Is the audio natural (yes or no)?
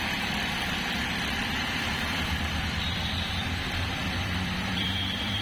no